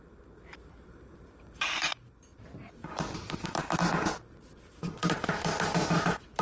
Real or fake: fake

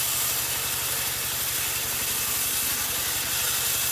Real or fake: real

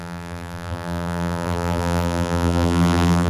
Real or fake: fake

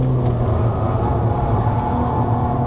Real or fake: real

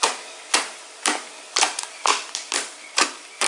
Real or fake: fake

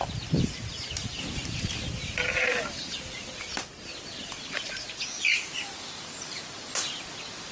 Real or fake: fake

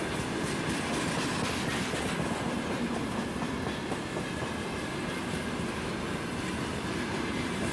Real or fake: real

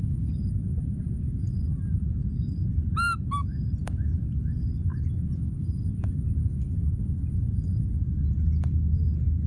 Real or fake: fake